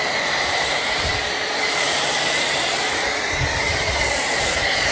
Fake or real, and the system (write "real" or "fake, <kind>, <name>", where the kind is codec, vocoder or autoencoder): fake, vocoder, BigVGAN v2